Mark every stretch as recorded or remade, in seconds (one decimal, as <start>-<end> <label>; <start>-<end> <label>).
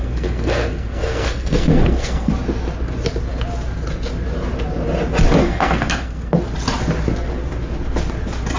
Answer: 0.0-2.3 remade; 2.3-5.4 recorded; 5.4-6.4 remade; 6.4-8.6 recorded